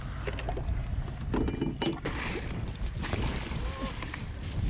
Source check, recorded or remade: recorded